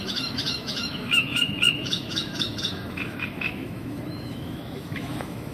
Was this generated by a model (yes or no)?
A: yes